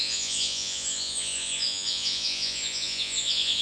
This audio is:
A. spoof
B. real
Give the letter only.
A